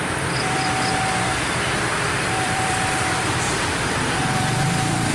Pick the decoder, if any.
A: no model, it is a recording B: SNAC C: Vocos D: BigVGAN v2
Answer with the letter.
D